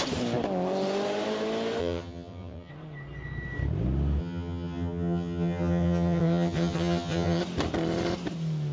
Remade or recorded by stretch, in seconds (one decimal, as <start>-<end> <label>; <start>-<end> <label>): 0.0-1.8 recorded; 1.8-2.7 remade; 2.7-4.2 recorded; 4.2-7.4 remade; 7.4-8.7 recorded